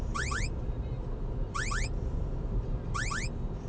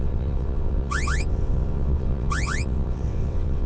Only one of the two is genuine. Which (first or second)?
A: first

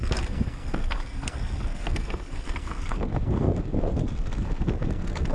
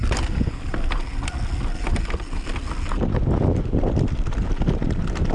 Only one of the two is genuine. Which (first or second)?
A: second